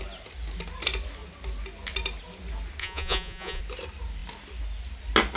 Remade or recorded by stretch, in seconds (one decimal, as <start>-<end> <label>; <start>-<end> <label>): 0.0-2.8 recorded; 2.8-3.6 remade; 3.6-5.4 recorded